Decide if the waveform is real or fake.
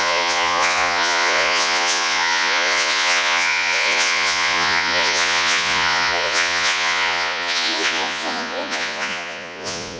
fake